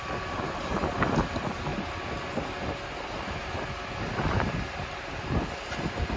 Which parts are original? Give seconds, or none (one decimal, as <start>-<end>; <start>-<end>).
0.0-6.2